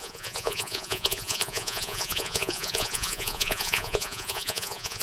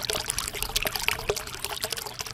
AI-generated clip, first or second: first